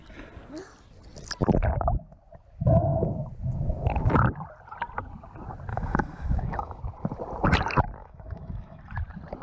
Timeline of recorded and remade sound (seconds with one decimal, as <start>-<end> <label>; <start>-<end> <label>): 0.0-5.7 recorded; 5.7-6.8 remade; 6.8-8.0 recorded; 8.0-8.8 remade; 8.8-9.4 recorded